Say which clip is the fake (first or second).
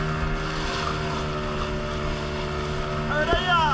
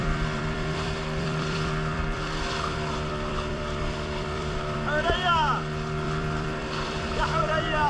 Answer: second